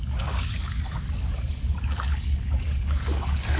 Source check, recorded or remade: remade